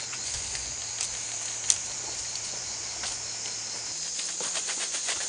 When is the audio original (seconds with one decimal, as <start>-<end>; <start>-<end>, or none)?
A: 0.8-1.9; 2.8-4.6